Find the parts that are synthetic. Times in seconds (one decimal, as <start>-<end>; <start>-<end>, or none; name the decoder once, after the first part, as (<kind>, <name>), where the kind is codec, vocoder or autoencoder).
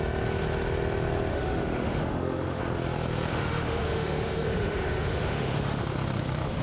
1.3-2.6 (autoencoder, DAC-VAE); 3.3-5.8